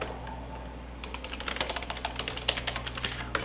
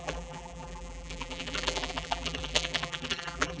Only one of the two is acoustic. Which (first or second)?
first